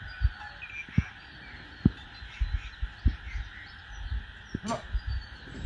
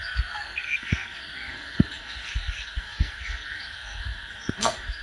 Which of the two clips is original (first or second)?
first